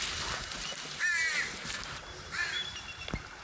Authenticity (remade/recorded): recorded